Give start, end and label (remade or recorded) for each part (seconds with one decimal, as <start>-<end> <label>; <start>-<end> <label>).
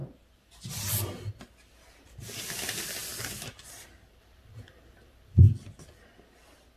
0.0-3.0 recorded; 3.0-6.0 remade; 6.0-6.8 recorded